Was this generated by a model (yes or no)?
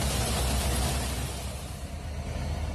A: no